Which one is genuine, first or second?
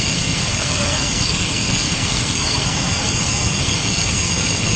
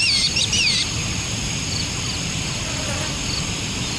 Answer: second